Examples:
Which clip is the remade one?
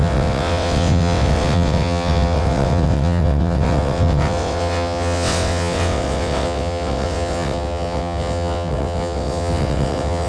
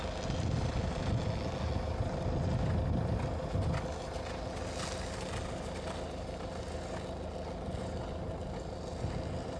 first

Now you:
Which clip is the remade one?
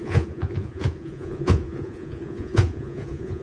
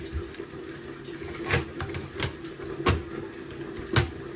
first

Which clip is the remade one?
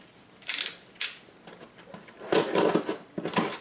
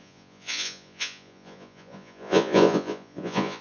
second